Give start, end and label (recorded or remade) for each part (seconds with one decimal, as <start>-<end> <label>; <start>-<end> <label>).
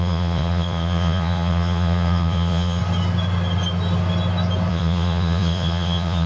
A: 0.0-2.8 remade; 2.8-4.7 recorded; 4.7-6.3 remade